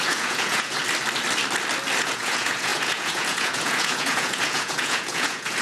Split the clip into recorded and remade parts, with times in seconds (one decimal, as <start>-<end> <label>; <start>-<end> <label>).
0.0-0.8 remade; 0.8-2.0 recorded; 2.0-5.6 remade